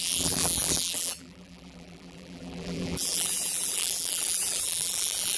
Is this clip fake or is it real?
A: fake